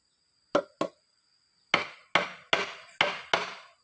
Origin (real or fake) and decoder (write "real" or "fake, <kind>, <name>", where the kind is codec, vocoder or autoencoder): real